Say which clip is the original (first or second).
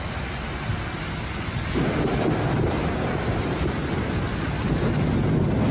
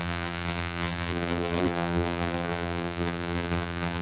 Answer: first